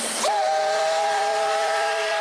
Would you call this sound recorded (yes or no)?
no